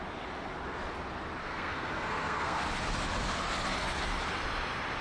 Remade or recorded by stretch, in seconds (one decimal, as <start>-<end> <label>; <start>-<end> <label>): 0.0-1.4 recorded; 1.4-2.6 remade; 2.6-5.0 recorded